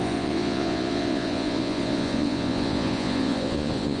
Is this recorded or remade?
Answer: remade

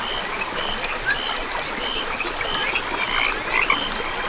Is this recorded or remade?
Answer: recorded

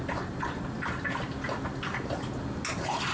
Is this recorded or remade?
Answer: recorded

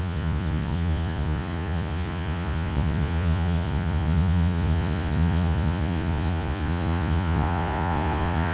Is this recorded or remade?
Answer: remade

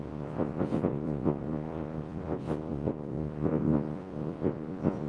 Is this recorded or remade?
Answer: remade